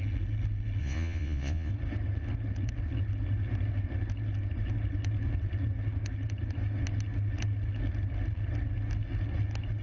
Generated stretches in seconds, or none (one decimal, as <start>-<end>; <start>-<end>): 0.8-1.7